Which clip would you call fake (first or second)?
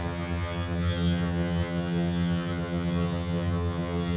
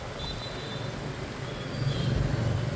first